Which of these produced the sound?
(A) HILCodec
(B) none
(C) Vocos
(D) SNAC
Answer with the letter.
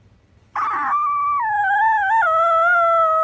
B